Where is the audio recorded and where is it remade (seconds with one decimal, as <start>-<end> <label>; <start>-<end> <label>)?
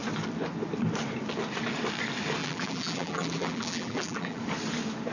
0.0-2.4 recorded; 2.4-4.4 remade; 4.4-5.1 recorded